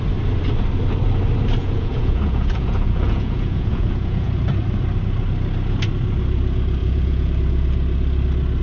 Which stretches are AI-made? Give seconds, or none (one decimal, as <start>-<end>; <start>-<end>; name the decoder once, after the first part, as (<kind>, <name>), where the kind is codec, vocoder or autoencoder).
1.6-4.4 (vocoder, Vocos); 6.8-7.3